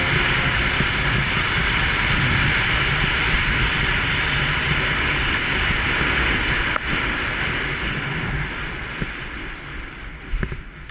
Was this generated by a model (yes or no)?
no